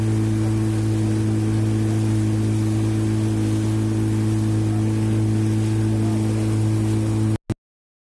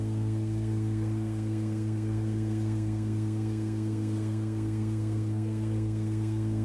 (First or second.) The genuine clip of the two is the first